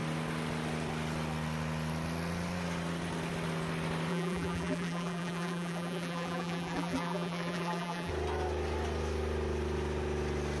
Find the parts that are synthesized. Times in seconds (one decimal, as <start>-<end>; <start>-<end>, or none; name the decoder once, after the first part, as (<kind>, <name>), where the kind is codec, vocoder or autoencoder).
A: 4.1-8.1 (vocoder, BigVGAN v2)